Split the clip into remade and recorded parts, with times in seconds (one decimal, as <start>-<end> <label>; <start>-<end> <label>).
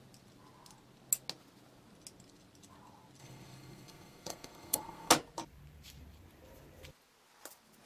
0.0-3.2 recorded; 3.2-5.1 remade; 5.1-7.9 recorded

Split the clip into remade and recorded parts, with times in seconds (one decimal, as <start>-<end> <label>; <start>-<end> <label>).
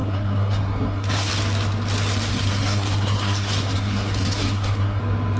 0.0-1.3 remade; 1.3-2.3 recorded; 2.3-5.0 remade; 5.0-5.4 recorded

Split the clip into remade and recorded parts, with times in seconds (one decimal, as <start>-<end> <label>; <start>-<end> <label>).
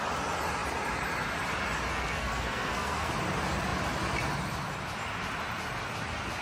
0.0-1.9 recorded; 1.9-3.1 remade; 3.1-6.4 recorded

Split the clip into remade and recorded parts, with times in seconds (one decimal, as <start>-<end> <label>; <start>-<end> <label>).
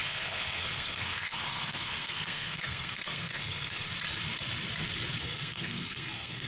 0.0-3.9 remade; 3.9-5.2 recorded; 5.2-6.5 remade